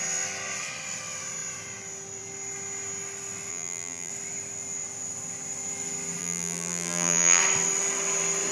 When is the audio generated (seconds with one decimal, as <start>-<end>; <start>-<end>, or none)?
3.5-4.1; 6.2-7.4